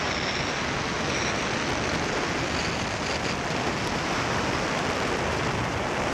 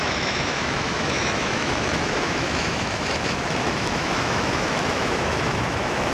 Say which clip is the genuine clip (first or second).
first